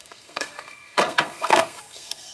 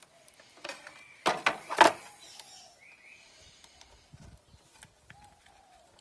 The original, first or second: second